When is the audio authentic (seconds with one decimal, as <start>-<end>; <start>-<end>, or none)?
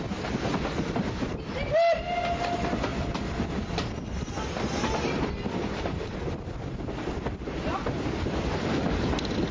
0.0-9.5